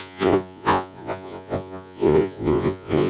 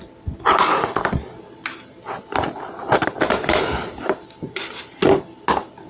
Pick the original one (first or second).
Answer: second